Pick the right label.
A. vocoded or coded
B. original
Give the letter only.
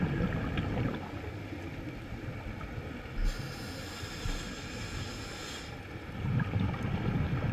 B